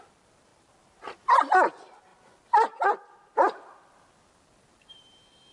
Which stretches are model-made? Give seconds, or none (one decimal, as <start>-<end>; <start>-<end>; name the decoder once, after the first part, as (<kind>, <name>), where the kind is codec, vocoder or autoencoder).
none